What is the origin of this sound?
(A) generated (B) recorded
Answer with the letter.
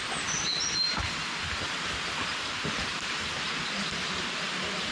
B